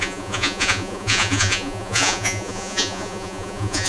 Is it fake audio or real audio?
fake